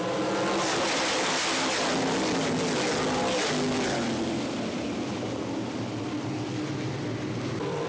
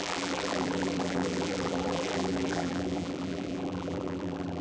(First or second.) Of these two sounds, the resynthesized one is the second